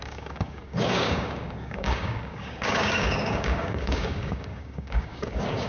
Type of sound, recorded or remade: remade